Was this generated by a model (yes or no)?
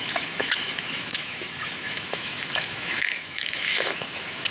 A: yes